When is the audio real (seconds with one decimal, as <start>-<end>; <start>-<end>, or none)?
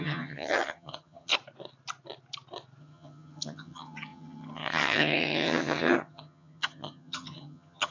1.3-2.8